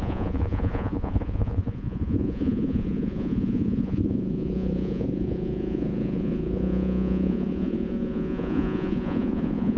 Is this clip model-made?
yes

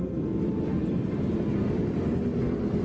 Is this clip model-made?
no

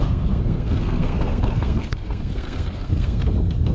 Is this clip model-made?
yes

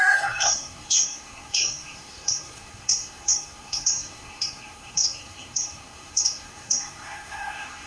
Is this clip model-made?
yes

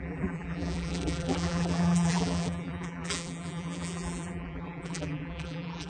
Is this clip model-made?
yes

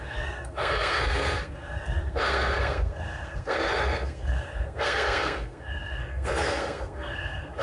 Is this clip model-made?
yes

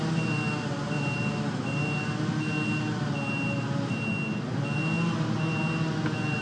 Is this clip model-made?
no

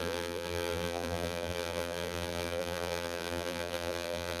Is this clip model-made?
yes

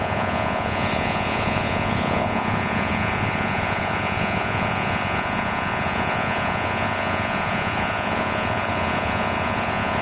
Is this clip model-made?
yes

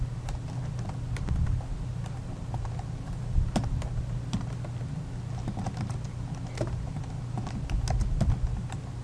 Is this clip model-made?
no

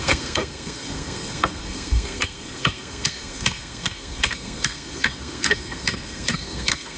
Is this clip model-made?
yes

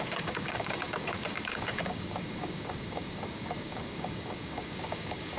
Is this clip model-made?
yes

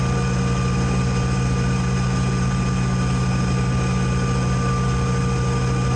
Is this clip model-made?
no